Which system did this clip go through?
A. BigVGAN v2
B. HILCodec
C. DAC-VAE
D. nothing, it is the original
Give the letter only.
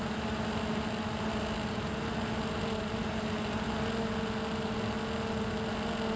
D